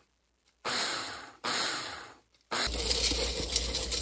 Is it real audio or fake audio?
real